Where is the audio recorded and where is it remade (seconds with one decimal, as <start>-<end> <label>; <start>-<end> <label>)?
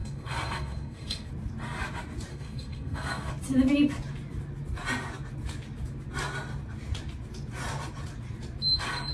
0.0-1.3 remade; 1.3-2.3 recorded; 2.3-3.3 remade; 3.3-9.1 recorded